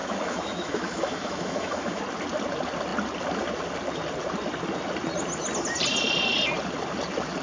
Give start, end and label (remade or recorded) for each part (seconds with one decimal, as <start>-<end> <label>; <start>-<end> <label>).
0.0-2.0 remade; 2.0-7.4 recorded